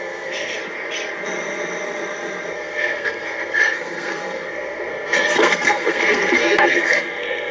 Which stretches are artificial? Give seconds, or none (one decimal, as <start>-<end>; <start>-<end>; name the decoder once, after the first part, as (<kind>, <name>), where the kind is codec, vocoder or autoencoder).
0.0-0.6 (codec, SNAC); 2.5-7.5